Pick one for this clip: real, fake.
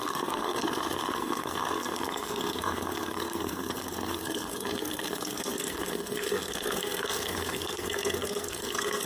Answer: fake